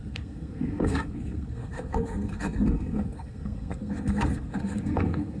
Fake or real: fake